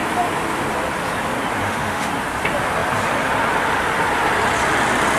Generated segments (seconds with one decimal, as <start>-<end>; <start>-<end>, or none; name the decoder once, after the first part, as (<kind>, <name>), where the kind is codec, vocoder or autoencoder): 1.6-2.1 (autoencoder, DAC-VAE)